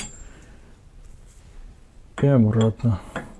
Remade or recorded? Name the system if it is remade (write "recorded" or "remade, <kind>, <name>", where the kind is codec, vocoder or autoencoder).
remade, vocoder, BigVGAN v2